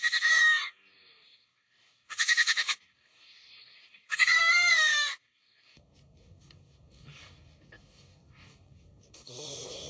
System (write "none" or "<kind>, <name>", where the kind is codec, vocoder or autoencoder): codec, DAC